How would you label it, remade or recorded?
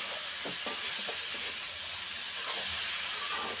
recorded